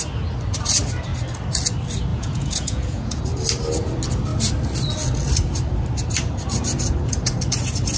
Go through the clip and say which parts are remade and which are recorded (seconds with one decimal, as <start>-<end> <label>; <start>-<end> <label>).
0.0-2.1 recorded; 2.1-3.2 remade; 3.2-8.0 recorded